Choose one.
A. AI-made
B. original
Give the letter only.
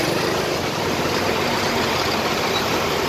B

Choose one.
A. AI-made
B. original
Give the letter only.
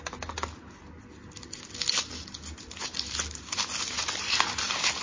B